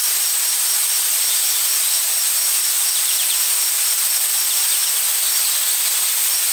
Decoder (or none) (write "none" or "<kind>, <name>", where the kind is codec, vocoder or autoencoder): none